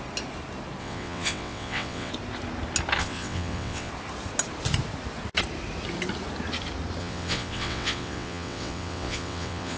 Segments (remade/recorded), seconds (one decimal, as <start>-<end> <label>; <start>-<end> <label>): 0.0-0.8 recorded; 0.8-2.1 remade; 2.1-3.0 recorded; 3.0-3.9 remade; 3.9-7.0 recorded; 7.0-9.8 remade